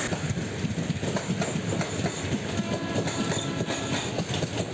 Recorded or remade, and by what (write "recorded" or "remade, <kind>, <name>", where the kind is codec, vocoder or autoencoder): recorded